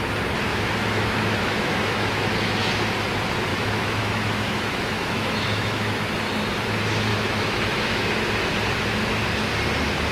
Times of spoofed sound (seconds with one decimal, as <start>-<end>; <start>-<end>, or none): 0.5-2.7; 3.5-6.1; 7.1-8.1